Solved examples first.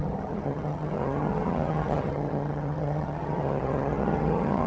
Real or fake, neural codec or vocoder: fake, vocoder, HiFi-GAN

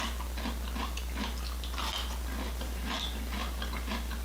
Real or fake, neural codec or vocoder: real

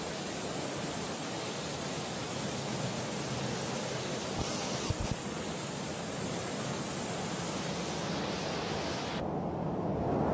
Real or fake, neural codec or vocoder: real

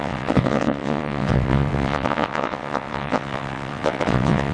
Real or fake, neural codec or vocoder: fake, vocoder, WaveNeXt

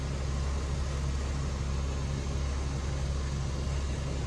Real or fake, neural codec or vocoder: real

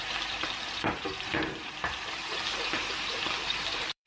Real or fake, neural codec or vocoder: fake, vocoder, BigVGAN v2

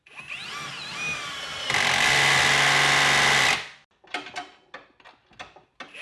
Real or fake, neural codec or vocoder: real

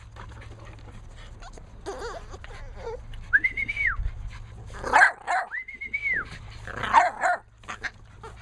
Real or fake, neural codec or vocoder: real